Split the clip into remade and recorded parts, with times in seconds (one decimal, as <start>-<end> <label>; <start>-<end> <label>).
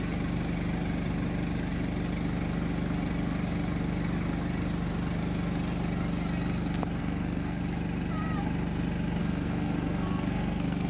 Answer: 0.0-7.0 recorded; 7.0-7.6 remade; 7.6-9.2 recorded; 9.2-10.9 remade